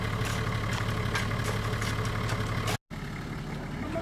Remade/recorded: recorded